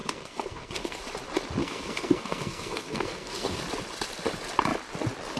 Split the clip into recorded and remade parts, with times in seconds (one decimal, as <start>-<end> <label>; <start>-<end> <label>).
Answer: 0.0-1.0 remade; 1.0-1.6 recorded; 1.6-3.6 remade; 3.6-5.4 recorded